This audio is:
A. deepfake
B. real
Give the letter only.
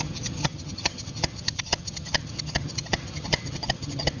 A